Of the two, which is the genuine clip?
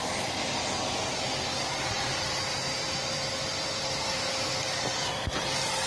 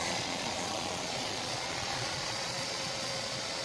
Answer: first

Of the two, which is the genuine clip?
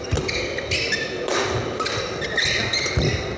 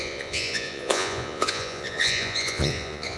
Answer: first